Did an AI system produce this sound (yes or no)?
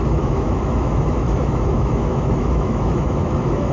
yes